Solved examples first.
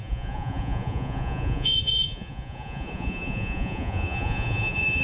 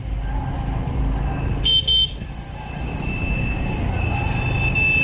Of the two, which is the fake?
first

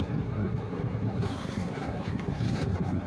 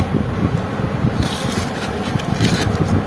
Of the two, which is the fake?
first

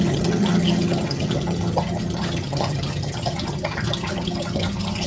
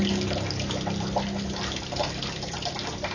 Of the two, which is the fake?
first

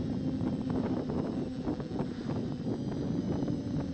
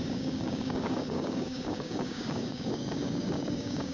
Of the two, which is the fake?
second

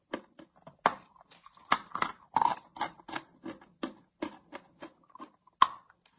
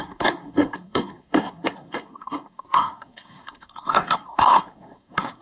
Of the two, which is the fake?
second